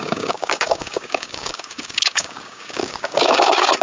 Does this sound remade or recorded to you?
remade